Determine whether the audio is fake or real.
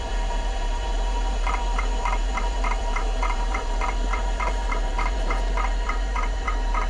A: fake